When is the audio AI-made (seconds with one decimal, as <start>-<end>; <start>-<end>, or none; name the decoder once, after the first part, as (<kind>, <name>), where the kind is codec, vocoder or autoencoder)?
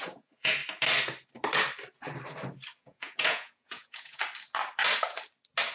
0.0-0.6 (vocoder, Vocos); 2.8-4.2